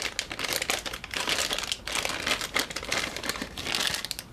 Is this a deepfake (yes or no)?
no